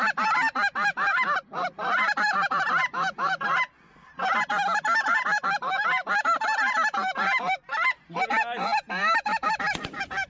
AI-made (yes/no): no